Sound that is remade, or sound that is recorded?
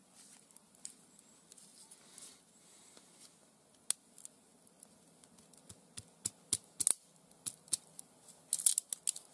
recorded